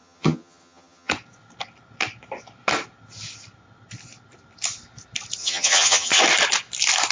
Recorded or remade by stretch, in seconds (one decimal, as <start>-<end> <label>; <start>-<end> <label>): 0.0-1.1 remade; 1.1-5.4 recorded; 5.4-6.2 remade; 6.2-7.1 recorded

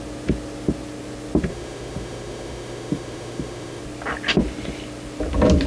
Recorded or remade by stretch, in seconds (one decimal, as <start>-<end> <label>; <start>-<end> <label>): 0.0-1.5 recorded; 1.5-3.8 remade; 3.8-5.7 recorded

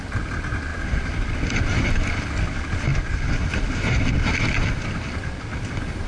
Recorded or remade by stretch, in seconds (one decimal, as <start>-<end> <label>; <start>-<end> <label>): 0.0-6.1 recorded

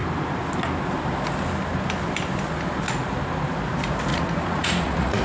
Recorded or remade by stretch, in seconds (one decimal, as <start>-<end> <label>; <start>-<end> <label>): 0.0-4.1 recorded; 4.1-5.2 remade

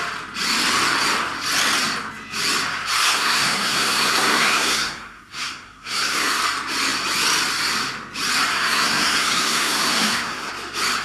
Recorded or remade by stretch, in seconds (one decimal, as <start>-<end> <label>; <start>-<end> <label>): 0.0-3.0 recorded; 3.0-6.4 remade; 6.4-8.5 recorded; 8.5-10.5 remade; 10.5-11.0 recorded

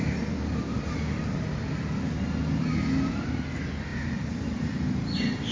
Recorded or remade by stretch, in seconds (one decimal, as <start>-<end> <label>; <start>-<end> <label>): 0.0-5.5 recorded

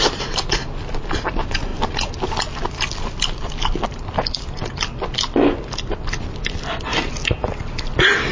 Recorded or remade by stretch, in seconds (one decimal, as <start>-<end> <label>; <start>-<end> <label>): 0.0-8.3 recorded